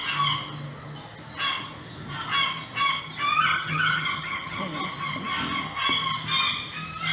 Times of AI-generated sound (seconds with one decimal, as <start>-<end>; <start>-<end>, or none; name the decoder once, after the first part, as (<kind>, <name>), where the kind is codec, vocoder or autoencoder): 3.5-4.6 (vocoder, HiFi-GAN)